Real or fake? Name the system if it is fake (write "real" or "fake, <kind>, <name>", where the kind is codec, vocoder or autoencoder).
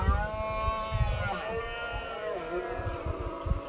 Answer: real